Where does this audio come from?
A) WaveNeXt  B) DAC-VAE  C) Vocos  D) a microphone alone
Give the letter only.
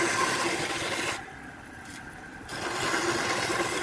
D